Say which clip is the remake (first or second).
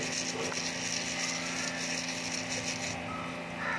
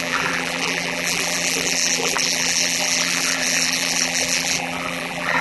second